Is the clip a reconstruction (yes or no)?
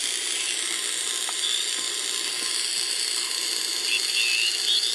no